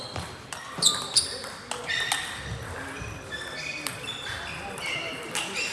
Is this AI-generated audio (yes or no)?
no